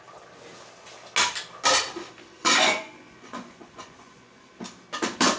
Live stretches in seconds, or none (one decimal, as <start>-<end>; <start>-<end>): 0.0-2.4; 4.5-5.4